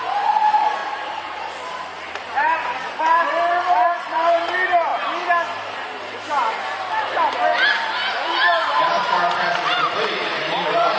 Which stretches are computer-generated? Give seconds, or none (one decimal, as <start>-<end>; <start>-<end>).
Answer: 0.0-4.9; 8.8-11.0